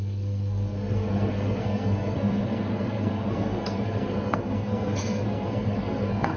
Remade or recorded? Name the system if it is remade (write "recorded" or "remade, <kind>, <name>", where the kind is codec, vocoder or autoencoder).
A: remade, codec, SNAC